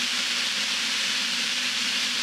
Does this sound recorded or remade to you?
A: remade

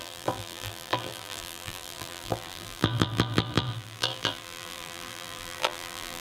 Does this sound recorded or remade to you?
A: remade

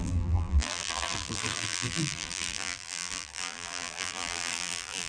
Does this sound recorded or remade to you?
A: remade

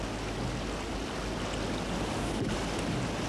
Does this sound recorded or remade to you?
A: recorded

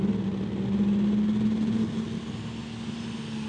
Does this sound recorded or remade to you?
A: recorded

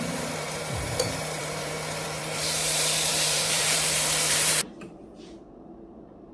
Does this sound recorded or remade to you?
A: remade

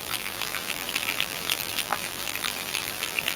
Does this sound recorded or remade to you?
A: remade